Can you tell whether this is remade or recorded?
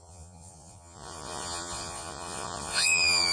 remade